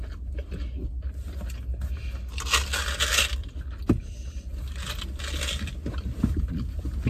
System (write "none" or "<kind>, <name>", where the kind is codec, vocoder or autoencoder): none